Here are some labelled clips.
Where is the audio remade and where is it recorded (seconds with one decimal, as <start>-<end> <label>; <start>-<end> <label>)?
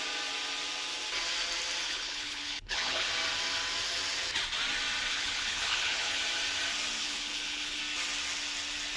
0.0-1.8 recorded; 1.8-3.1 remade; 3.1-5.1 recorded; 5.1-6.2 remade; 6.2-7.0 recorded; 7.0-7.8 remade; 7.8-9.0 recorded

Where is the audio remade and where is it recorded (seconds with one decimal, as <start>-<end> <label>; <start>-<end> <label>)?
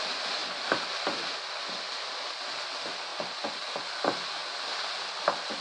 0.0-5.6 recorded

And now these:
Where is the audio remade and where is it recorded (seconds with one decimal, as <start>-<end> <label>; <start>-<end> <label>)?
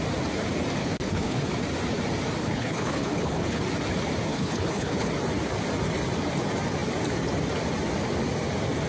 0.0-0.8 recorded; 0.8-1.5 remade; 1.5-2.4 recorded; 2.4-3.6 remade; 3.6-4.3 recorded; 4.3-5.1 remade; 5.1-8.9 recorded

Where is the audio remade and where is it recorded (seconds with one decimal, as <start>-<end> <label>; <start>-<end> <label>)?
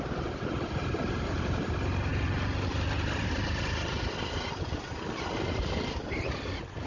0.0-6.9 recorded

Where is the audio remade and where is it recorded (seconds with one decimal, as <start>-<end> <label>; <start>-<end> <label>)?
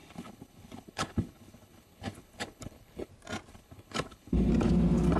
0.0-3.1 remade; 3.1-3.5 recorded; 3.5-4.5 remade; 4.5-5.2 recorded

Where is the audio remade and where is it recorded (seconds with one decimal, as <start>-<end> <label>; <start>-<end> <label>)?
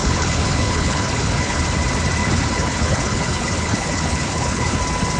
0.0-1.6 remade; 1.6-2.2 recorded; 2.2-4.8 remade; 4.8-5.2 recorded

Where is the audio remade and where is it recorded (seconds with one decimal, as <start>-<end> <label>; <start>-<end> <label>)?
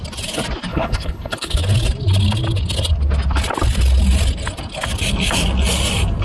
0.0-0.7 recorded; 0.7-1.6 remade; 1.6-6.2 recorded